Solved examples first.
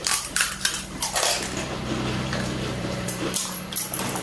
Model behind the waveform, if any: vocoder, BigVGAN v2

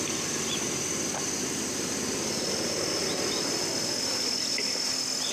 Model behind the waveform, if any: none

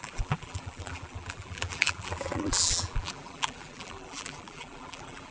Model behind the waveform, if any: vocoder, BigVGAN v2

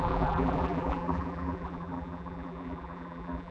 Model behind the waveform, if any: vocoder, BigVGAN v2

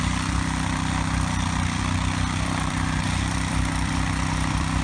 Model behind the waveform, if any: vocoder, BigVGAN v2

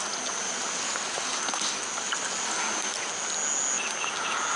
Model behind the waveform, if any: none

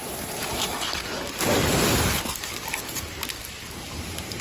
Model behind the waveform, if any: none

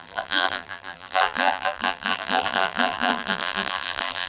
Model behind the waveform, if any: vocoder, BigVGAN v2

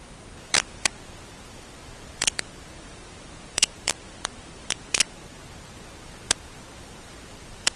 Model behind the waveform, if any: vocoder, BigVGAN v2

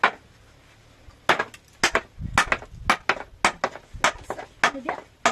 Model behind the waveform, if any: none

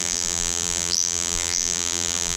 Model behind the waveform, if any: vocoder, BigVGAN v2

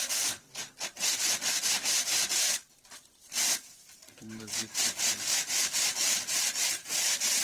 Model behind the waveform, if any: vocoder, BigVGAN v2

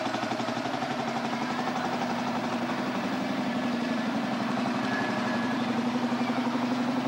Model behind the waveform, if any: vocoder, BigVGAN v2